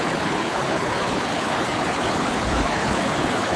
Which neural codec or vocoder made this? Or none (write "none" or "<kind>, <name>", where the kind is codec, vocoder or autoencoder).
codec, HILCodec